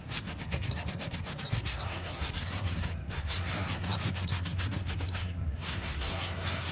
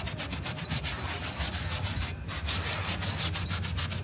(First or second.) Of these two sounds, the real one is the second